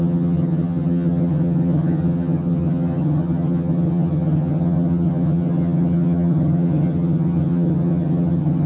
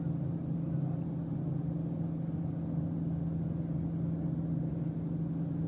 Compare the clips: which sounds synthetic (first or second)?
first